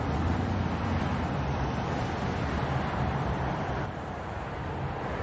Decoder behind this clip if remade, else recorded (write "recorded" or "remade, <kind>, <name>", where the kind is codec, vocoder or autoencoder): remade, vocoder, BigVGAN v2